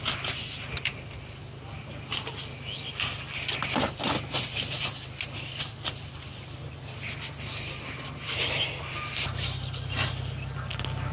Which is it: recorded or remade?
recorded